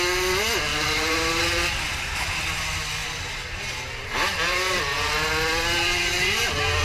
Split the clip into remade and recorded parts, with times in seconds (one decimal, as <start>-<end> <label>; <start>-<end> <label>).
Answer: 0.0-0.7 recorded; 0.7-1.4 remade; 1.4-6.8 recorded